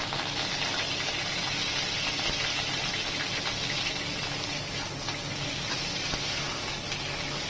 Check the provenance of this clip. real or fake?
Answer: real